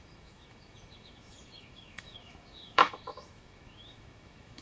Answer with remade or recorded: remade